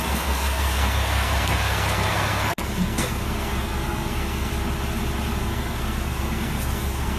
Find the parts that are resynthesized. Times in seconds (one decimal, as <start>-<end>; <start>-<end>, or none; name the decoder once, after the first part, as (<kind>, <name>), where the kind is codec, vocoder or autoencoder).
0.0-4.5 (codec, SNAC); 5.4-7.2